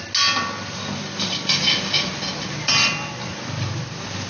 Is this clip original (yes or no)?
yes